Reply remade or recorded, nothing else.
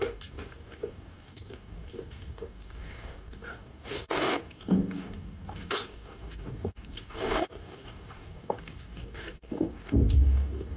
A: remade